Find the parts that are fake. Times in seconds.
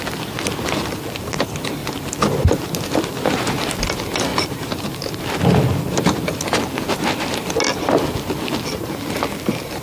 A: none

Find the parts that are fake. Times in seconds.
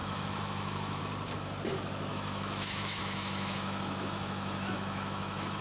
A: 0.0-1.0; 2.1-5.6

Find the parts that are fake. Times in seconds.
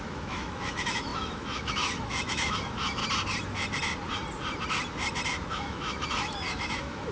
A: 0.0-3.0; 5.5-7.1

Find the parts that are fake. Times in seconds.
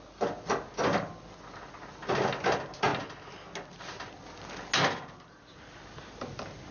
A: none